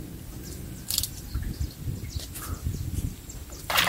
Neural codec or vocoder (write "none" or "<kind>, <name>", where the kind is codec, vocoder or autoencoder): none